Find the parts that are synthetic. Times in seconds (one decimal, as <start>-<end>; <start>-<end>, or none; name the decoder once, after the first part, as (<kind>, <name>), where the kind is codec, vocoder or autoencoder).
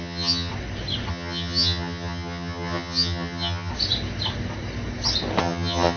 0.0-0.5 (vocoder, HiFi-GAN); 1.1-3.7; 5.4-6.0